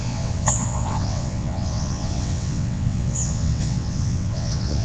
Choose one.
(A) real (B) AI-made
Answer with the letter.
B